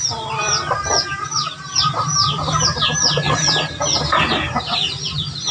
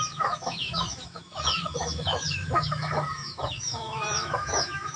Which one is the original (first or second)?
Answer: first